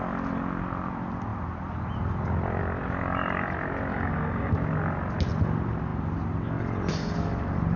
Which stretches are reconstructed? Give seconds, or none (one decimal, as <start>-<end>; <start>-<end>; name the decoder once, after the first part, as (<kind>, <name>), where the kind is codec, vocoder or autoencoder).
3.9-4.5 (codec, DAC)